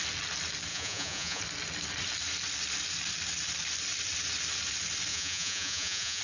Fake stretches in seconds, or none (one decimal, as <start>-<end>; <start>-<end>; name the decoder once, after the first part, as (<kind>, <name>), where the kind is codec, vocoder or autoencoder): 0.7-1.4 (vocoder, Vocos); 5.1-6.2